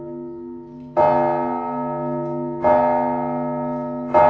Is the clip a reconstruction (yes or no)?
no